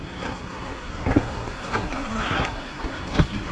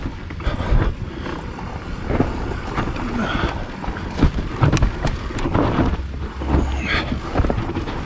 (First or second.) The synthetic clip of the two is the first